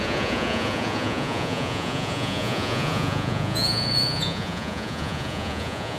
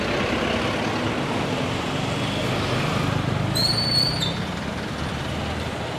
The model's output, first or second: first